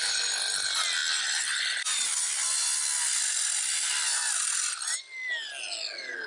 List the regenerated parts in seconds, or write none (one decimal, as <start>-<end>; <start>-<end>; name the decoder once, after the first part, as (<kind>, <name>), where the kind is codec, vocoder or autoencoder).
1.0-2.3 (vocoder, BigVGAN v2); 4.1-5.3